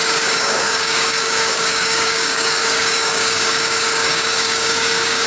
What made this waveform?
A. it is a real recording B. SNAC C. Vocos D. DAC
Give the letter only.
D